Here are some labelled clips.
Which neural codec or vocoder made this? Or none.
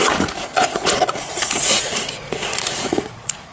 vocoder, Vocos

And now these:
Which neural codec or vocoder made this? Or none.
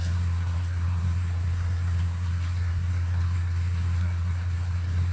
codec, SNAC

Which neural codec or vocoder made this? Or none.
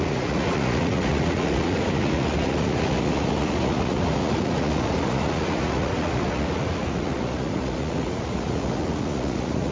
vocoder, Vocos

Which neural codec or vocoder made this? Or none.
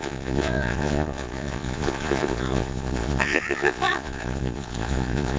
vocoder, Vocos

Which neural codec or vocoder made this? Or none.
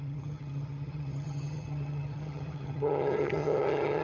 vocoder, HiFi-GAN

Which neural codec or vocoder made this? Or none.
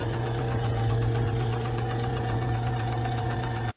vocoder, Vocos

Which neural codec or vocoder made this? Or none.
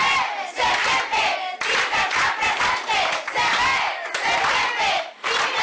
none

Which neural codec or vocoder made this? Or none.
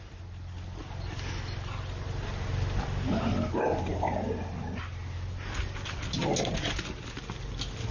none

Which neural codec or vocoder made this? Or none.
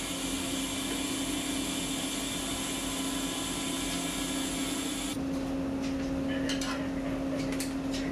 none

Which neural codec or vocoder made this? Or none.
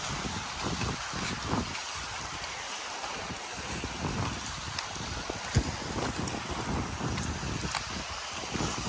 none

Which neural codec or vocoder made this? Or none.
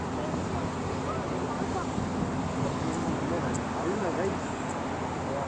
none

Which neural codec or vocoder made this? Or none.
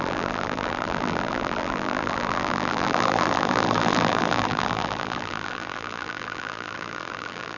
vocoder, BigVGAN v2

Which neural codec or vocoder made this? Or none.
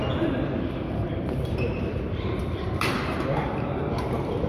vocoder, BigVGAN v2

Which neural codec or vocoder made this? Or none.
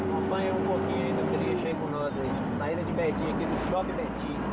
none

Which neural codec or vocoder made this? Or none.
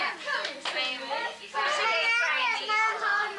none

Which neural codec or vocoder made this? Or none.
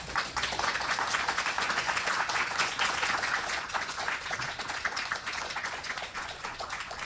vocoder, Vocos